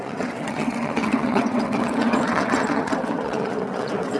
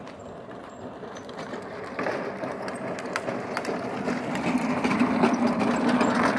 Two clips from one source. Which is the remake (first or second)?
first